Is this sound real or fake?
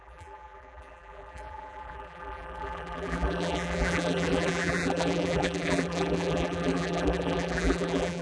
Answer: fake